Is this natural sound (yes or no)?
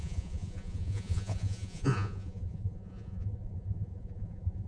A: no